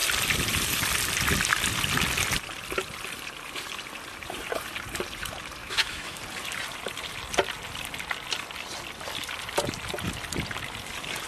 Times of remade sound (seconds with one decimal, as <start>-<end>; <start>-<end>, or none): 5.6-6.2